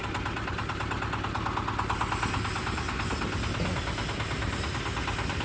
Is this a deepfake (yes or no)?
no